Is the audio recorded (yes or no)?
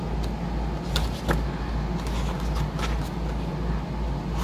yes